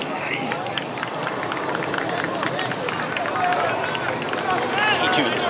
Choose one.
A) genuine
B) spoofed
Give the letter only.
A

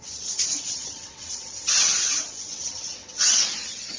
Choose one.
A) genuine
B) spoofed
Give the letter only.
B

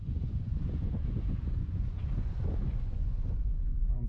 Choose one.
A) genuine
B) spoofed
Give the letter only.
B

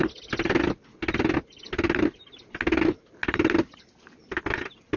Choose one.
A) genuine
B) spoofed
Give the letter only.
A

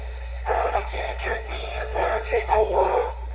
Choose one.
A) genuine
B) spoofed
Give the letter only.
B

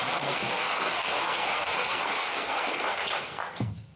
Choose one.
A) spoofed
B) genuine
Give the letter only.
A